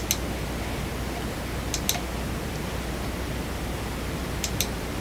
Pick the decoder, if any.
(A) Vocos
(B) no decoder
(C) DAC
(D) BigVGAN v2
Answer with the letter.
B